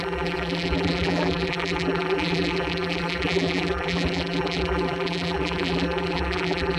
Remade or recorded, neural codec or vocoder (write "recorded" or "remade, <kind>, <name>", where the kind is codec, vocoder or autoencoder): remade, vocoder, BigVGAN v2